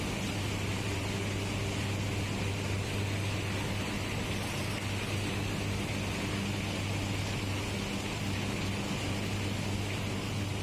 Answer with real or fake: real